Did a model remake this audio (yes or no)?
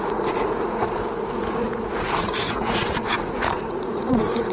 yes